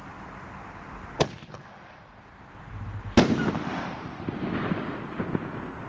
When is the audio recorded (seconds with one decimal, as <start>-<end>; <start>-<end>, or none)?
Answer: 0.0-5.9

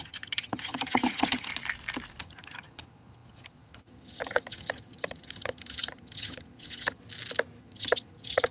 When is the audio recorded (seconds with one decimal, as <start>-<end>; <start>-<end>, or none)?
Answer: 1.5-2.2; 7.0-7.6

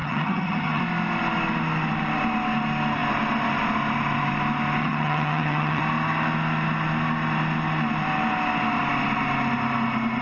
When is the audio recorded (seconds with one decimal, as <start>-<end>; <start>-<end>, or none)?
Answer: 0.8-4.8; 5.8-10.2

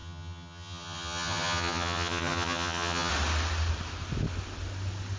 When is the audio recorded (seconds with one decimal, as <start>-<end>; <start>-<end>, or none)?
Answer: 3.1-5.2

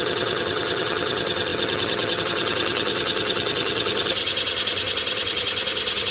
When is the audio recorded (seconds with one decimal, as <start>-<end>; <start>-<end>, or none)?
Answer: none

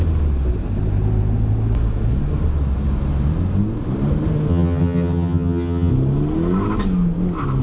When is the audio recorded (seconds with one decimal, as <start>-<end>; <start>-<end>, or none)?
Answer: 0.0-4.5; 5.9-7.6